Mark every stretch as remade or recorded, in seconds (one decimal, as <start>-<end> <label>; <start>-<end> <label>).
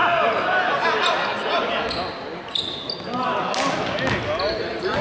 0.0-5.0 recorded